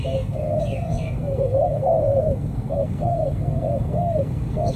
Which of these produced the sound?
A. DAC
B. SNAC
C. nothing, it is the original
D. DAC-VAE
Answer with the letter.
B